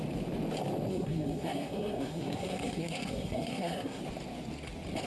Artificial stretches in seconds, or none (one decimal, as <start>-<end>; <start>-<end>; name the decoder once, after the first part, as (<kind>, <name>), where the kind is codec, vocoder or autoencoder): 0.9-4.0 (codec, SNAC)